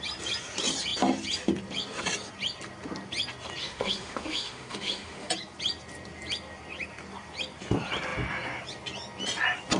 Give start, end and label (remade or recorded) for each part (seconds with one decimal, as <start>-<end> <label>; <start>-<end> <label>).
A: 0.0-3.6 recorded; 3.6-5.3 remade; 5.3-9.8 recorded